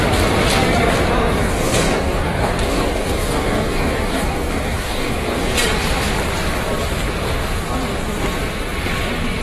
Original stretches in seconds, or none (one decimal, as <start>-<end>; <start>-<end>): 0.0-1.4; 5.6-9.4